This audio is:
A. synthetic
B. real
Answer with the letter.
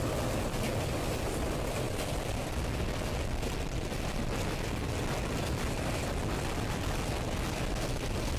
B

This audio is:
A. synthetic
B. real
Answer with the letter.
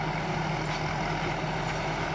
B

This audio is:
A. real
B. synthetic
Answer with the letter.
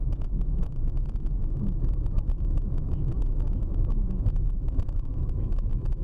B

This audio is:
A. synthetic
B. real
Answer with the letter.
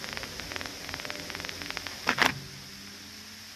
B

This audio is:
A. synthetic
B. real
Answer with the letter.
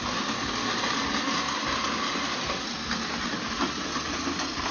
B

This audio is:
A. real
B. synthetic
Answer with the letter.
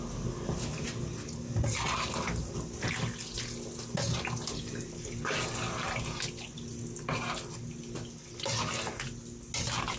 A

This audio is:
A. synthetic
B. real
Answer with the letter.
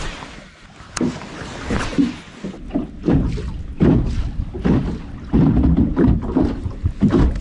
B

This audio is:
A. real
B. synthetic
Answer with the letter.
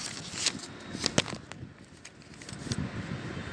A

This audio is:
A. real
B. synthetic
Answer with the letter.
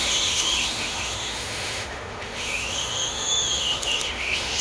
B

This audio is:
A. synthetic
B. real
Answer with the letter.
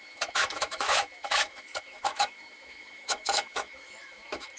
A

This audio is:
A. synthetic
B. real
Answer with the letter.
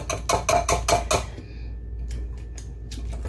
B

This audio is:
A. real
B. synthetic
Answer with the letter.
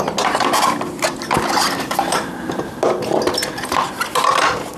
A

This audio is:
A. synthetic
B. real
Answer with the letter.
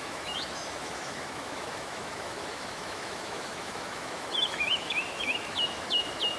A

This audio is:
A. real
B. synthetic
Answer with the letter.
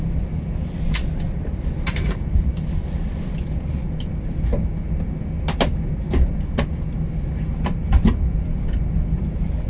A